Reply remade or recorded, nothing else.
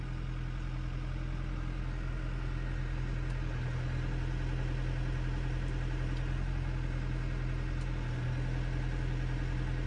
recorded